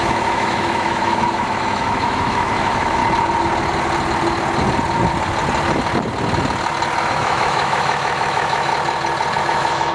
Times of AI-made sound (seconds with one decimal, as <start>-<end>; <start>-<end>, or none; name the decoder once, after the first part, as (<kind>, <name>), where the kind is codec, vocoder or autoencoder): 0.0-3.0 (autoencoder, DAC-VAE); 7.0-8.7; 9.4-9.9